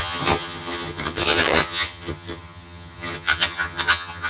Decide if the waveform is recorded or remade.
remade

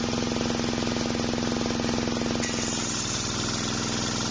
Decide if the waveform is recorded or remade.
recorded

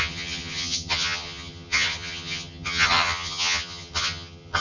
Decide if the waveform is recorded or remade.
remade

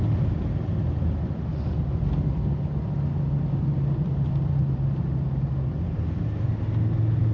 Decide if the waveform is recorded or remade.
recorded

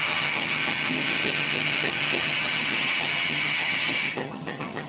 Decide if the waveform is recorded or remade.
remade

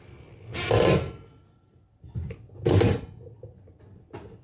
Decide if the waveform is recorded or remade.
recorded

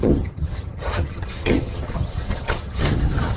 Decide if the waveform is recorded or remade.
remade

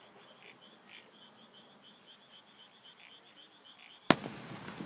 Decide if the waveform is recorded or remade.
recorded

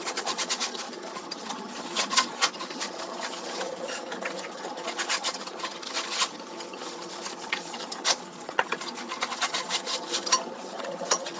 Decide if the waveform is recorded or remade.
remade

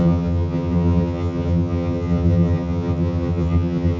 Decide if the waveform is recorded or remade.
remade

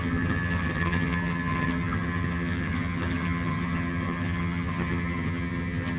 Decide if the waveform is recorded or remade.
remade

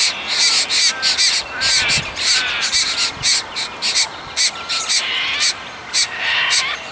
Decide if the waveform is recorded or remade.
recorded